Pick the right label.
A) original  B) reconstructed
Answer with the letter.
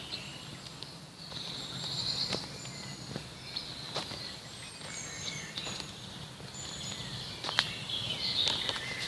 A